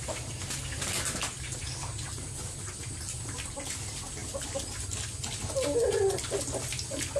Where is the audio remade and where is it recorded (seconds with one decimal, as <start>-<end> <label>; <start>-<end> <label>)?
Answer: 0.0-7.2 recorded